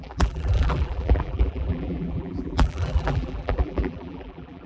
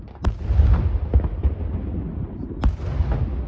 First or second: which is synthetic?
first